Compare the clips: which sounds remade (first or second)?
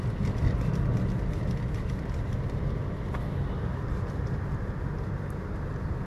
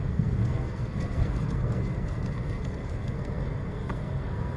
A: second